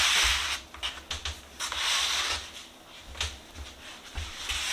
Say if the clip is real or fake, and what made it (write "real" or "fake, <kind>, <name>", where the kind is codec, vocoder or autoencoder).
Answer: real